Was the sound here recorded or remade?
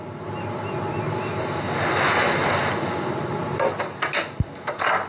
recorded